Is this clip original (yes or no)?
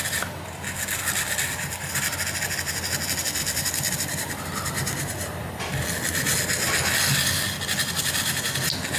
yes